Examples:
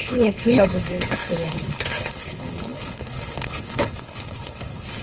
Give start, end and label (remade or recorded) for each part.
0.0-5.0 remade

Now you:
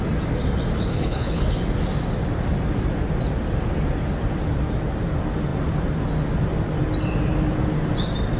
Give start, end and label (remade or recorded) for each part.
0.0-0.9 recorded; 0.9-1.5 remade; 1.5-8.4 recorded

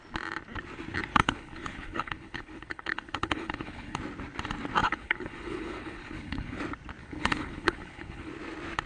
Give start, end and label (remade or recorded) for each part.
0.0-1.1 recorded; 1.1-4.0 remade; 4.0-4.8 recorded; 4.8-6.6 remade; 6.6-7.0 recorded; 7.0-8.3 remade; 8.3-8.9 recorded